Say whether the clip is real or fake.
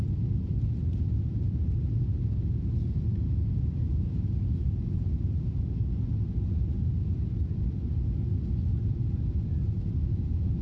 real